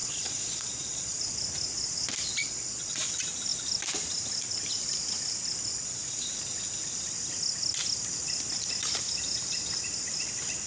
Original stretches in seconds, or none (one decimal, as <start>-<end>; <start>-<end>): 1.2-2.4; 3.1-5.7; 6.3-10.7

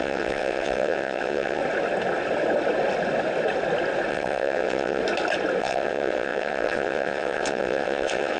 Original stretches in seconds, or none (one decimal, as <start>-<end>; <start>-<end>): 1.6-4.1; 5.0-5.6

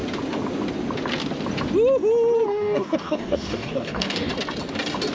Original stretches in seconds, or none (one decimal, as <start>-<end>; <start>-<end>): 0.0-2.5; 4.3-5.1